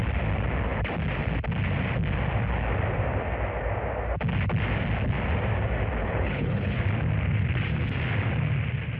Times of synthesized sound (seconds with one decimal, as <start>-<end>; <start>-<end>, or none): 6.0-6.8